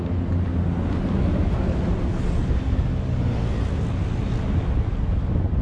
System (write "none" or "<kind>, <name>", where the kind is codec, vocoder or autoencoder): none